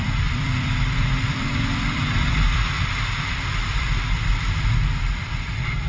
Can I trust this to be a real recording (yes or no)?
no